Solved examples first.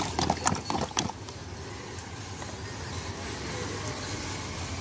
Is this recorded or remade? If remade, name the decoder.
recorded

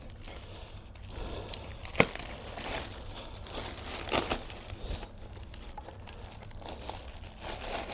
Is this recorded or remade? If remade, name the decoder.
recorded